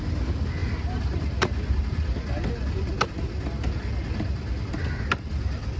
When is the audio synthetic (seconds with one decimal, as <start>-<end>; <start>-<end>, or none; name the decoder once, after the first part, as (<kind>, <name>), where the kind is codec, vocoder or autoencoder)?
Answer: none